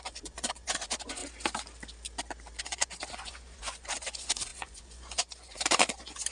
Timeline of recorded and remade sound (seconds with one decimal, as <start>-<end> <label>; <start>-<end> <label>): 0.0-1.2 remade; 1.2-2.6 recorded; 2.6-6.3 remade